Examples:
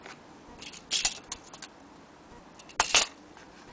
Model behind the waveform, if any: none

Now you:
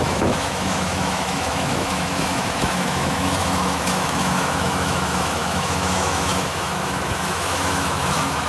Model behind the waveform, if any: autoencoder, DAC-VAE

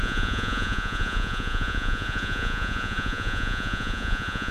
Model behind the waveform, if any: vocoder, Vocos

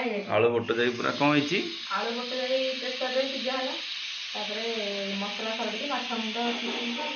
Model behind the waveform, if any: none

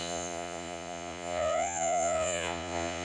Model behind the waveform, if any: vocoder, Vocos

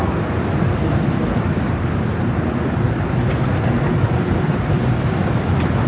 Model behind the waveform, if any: vocoder, BigVGAN v2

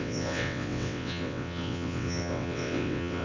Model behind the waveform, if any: vocoder, WaveNeXt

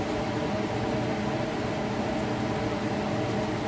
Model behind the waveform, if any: none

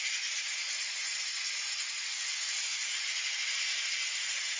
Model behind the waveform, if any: none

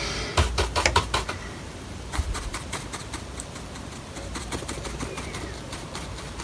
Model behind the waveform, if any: vocoder, BigVGAN v2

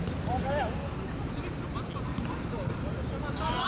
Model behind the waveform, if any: none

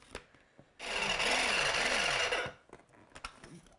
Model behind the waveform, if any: none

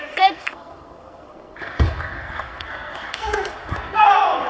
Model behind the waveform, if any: codec, SNAC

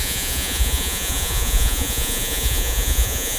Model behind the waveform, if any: vocoder, Vocos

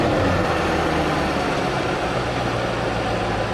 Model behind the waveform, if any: none